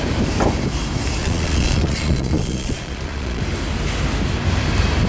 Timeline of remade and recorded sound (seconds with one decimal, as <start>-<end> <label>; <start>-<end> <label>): 0.0-1.2 recorded; 1.2-3.4 remade; 3.4-5.1 recorded